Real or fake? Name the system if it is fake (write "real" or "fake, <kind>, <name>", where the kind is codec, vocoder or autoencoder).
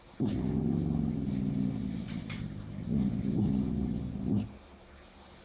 real